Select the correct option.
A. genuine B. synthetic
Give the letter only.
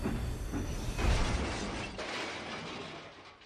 A